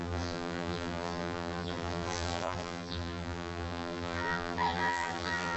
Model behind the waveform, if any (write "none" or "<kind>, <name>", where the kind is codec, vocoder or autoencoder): vocoder, BigVGAN v2